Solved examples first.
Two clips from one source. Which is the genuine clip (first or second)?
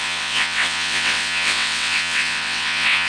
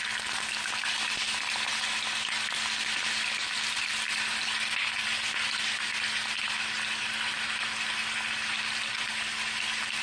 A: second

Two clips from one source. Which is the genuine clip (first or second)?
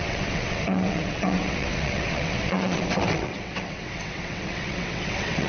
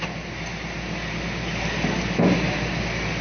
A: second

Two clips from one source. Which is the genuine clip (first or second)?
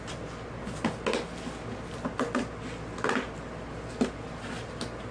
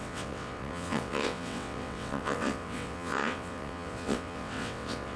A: first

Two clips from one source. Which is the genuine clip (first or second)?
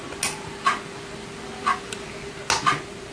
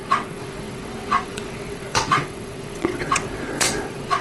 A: first